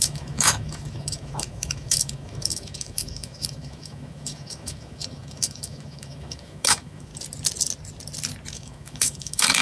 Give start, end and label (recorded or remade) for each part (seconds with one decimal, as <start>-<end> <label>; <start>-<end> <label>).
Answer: 0.0-7.1 remade; 7.1-8.5 recorded; 8.5-9.6 remade